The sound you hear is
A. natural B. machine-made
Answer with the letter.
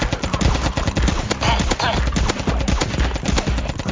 A